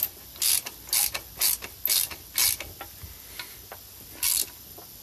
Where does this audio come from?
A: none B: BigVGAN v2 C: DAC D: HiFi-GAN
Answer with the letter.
A